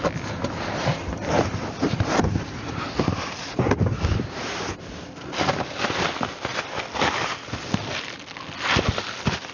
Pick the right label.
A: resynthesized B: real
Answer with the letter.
B